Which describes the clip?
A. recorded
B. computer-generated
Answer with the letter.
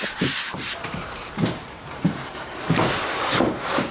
B